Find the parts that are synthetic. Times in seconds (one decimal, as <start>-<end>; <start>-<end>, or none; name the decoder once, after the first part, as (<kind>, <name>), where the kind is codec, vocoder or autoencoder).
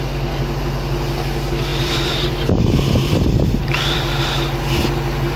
1.7-4.1 (vocoder, BigVGAN v2)